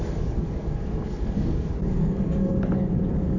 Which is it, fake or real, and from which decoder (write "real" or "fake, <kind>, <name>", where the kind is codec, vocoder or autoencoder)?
fake, codec, DAC